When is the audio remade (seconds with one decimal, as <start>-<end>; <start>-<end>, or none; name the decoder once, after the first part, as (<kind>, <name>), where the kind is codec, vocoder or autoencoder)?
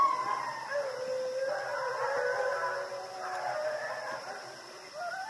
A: none